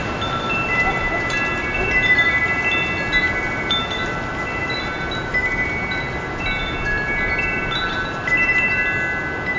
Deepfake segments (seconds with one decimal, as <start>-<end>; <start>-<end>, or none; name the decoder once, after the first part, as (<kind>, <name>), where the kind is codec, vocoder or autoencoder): none